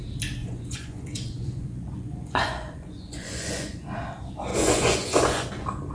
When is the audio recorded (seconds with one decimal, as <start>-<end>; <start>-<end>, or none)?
0.0-0.4; 3.9-4.5; 5.5-5.9